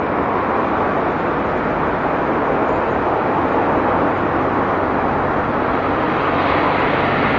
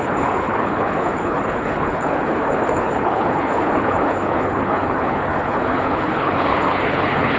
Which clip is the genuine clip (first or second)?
first